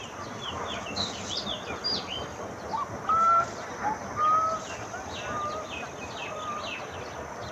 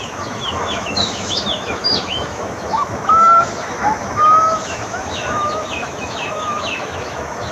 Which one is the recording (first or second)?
first